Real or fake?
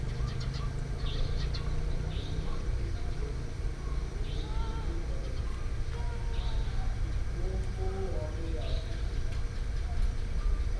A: real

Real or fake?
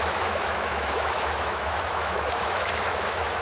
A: fake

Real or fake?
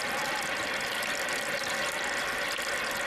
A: real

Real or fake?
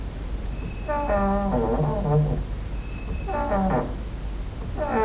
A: real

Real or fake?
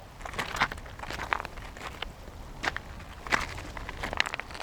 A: real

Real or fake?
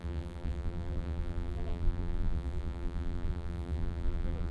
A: fake